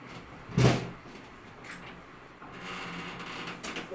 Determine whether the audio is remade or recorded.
recorded